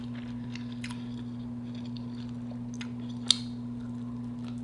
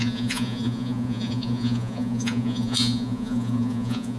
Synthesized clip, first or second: second